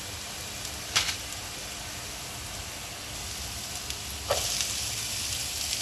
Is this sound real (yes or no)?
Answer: yes